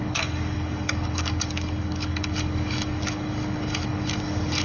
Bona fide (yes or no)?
no